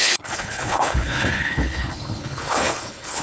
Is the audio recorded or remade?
remade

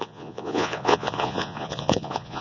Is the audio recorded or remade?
remade